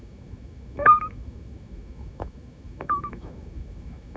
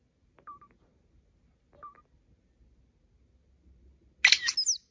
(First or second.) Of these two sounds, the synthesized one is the first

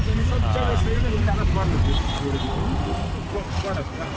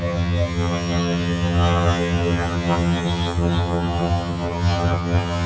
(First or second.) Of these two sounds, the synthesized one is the second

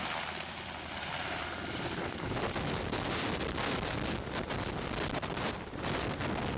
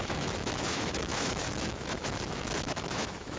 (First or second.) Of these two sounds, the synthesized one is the second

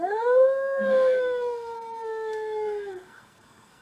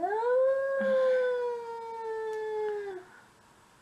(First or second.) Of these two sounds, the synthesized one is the first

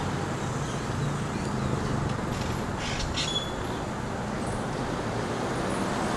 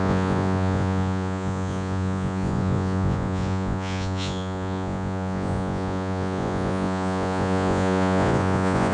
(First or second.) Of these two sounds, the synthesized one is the second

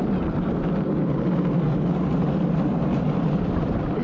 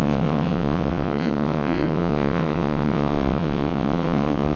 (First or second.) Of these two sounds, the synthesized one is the second